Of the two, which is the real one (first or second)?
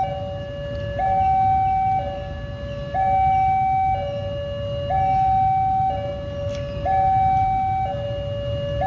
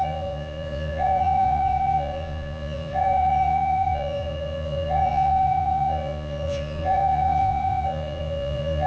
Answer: first